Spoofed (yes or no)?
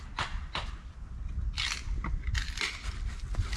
no